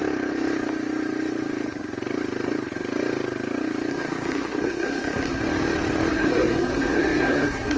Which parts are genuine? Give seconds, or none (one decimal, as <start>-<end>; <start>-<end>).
0.0-3.9; 5.4-6.1